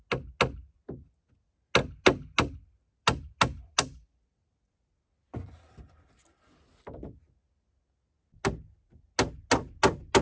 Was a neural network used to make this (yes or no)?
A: no